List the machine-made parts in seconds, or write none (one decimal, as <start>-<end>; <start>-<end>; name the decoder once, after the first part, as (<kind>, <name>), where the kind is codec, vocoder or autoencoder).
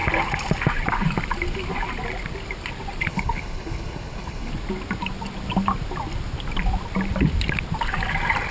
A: 3.1-4.5 (codec, HILCodec)